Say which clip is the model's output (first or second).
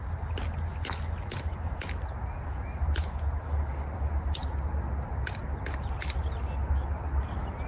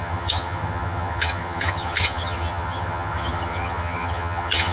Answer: second